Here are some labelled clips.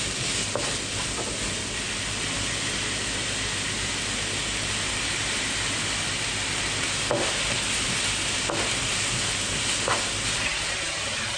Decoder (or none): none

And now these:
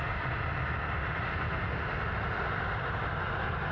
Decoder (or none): none